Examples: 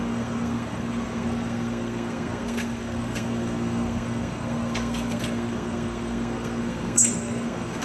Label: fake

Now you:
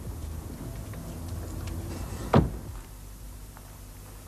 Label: real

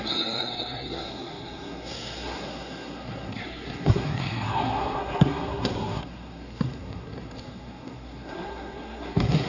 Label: fake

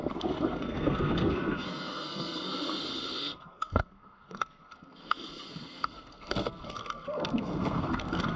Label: fake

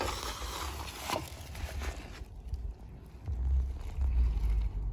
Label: real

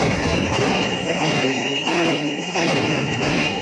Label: fake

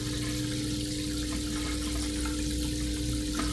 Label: real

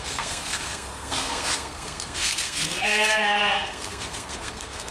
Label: fake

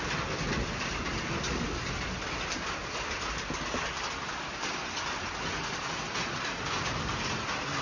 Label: real